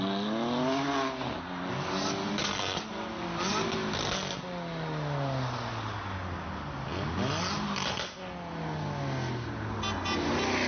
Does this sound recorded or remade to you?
recorded